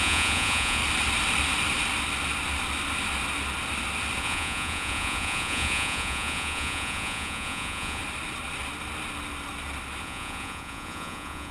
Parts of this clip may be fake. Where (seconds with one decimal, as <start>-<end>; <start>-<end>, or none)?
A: 0.0-0.8; 4.2-8.0; 10.0-11.5